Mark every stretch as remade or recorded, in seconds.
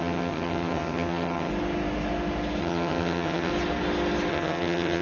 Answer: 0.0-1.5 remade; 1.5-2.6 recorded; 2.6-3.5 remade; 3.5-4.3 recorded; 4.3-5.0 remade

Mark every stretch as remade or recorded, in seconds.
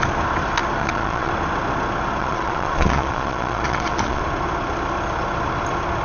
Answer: 0.0-0.8 recorded; 0.8-1.3 remade; 1.3-2.2 recorded; 2.2-4.2 remade; 4.2-6.0 recorded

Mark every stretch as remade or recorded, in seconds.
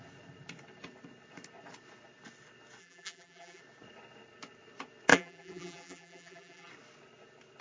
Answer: 0.0-2.8 recorded; 2.8-3.6 remade; 3.6-5.1 recorded; 5.1-6.7 remade; 6.7-7.6 recorded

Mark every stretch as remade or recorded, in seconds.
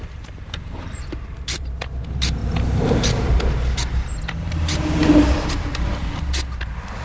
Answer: 0.0-6.0 remade; 6.0-6.6 recorded; 6.6-7.0 remade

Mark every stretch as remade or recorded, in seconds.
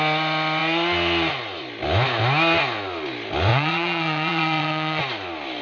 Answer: 0.0-3.5 recorded; 3.5-5.0 remade; 5.0-5.6 recorded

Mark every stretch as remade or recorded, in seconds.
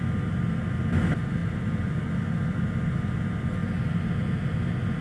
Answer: 0.0-1.4 recorded; 1.4-2.6 remade; 2.6-3.6 recorded; 3.6-4.2 remade; 4.2-5.0 recorded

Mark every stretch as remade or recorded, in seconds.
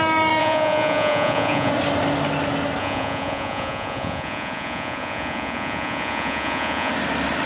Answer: 0.0-0.4 recorded; 0.4-1.7 remade; 1.7-2.8 recorded; 2.8-6.9 remade; 6.9-7.5 recorded